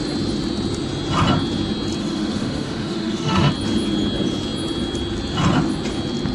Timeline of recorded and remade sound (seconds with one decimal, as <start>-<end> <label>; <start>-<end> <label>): 0.0-2.0 recorded; 2.0-3.5 remade; 3.5-6.3 recorded

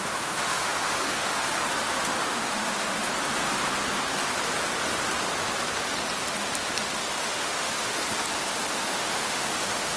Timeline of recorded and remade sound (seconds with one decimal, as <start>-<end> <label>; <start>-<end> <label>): 0.0-1.4 remade; 1.4-2.0 recorded; 2.0-3.0 remade; 3.0-7.2 recorded; 7.2-8.0 remade; 8.0-8.7 recorded; 8.7-10.0 remade

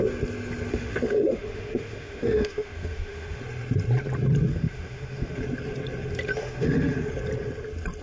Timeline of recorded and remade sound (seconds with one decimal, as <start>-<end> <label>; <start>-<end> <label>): 0.0-0.7 recorded; 0.7-3.4 remade; 3.4-4.5 recorded; 4.5-5.4 remade; 5.4-6.4 recorded; 6.4-7.1 remade; 7.1-8.0 recorded